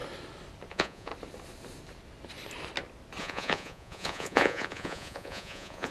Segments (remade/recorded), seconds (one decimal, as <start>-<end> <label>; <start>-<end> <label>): 0.0-0.7 recorded; 0.7-1.1 remade; 1.1-3.2 recorded; 3.2-5.9 remade